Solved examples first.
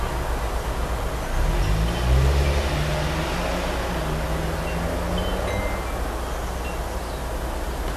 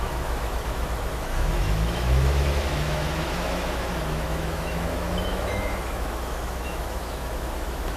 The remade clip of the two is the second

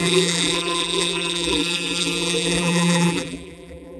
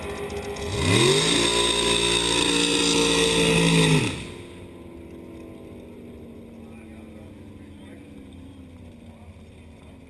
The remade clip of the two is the first